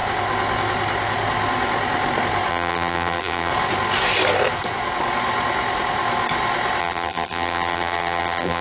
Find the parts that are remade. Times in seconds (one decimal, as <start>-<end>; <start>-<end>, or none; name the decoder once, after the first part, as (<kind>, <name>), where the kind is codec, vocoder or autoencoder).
2.5-3.5 (vocoder, BigVGAN v2); 6.8-8.6